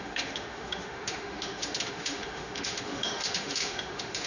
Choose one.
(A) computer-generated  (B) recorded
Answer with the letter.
A